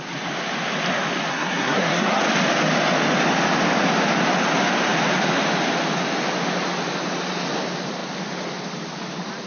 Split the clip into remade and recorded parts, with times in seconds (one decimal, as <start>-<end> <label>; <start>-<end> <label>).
0.0-1.3 recorded; 1.3-2.2 remade; 2.2-9.5 recorded